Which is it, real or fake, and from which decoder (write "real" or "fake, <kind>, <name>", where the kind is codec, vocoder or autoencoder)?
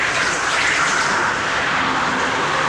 real